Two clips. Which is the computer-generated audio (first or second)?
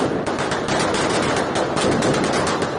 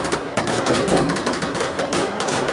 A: second